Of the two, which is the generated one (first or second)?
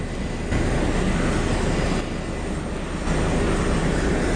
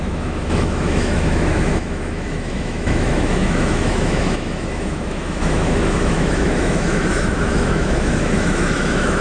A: second